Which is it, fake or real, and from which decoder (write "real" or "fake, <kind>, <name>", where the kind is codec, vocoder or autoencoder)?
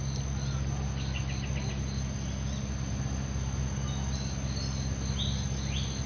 real